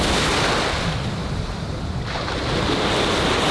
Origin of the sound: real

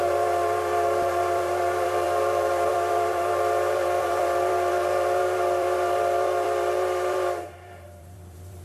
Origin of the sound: fake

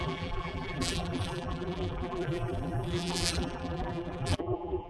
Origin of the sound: fake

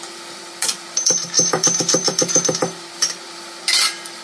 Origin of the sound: fake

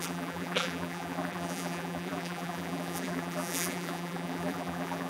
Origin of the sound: fake